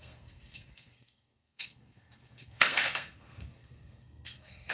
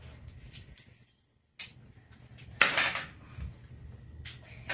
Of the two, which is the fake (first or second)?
first